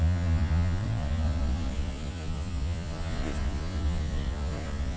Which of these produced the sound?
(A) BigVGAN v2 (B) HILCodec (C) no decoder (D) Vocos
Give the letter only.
D